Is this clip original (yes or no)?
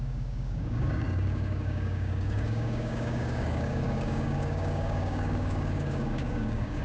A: no